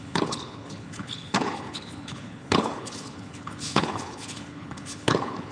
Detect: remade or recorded remade